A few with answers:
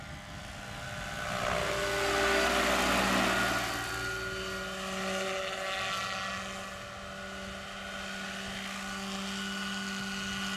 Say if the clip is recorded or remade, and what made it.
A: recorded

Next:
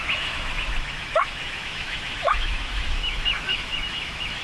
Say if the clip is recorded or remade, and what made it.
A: remade, autoencoder, DAC-VAE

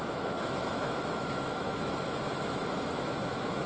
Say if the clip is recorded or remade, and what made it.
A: remade, autoencoder, DAC-VAE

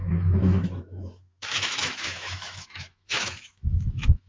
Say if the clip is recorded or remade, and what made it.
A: remade, autoencoder, DAC-VAE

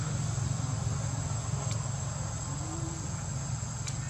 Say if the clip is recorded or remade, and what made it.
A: recorded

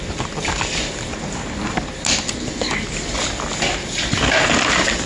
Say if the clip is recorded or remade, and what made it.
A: recorded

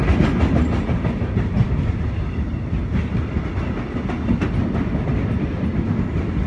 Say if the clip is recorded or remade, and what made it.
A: recorded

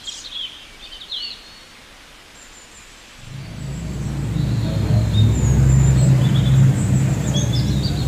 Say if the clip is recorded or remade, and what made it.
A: recorded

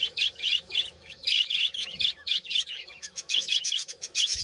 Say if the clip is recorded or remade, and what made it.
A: remade, autoencoder, DAC-VAE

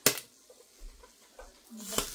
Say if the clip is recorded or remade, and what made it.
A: recorded